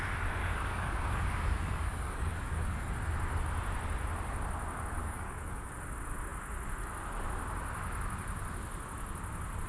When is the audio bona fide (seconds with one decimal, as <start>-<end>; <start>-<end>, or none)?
0.0-0.4; 2.9-5.0; 5.7-9.7

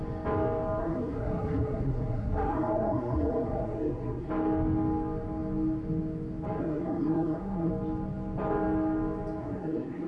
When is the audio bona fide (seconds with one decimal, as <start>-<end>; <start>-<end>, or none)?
0.0-0.8; 4.3-6.6; 7.7-9.4

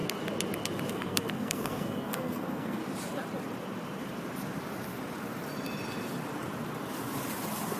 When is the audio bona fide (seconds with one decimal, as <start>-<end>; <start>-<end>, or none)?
0.0-0.9; 2.8-7.8

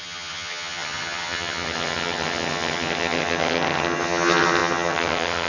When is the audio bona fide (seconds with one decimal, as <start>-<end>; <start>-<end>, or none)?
none

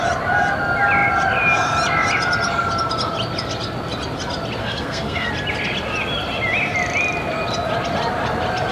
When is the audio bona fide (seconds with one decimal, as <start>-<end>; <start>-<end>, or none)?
0.0-4.6; 5.3-8.7

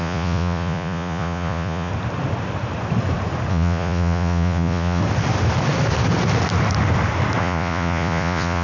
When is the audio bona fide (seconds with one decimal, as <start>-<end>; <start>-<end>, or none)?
1.9-3.5; 5.0-7.4